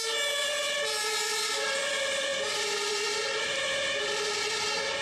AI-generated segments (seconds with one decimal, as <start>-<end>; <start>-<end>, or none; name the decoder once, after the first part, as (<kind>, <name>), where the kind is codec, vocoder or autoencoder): none